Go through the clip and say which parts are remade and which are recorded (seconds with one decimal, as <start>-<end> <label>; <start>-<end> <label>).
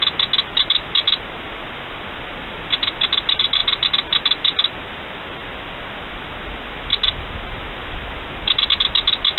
0.0-9.4 recorded